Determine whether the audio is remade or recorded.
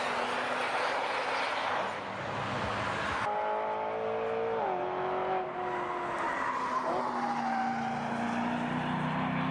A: recorded